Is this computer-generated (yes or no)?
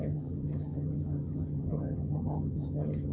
yes